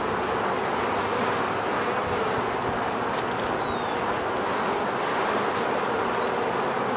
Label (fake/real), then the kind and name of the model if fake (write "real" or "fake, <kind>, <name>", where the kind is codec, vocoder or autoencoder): real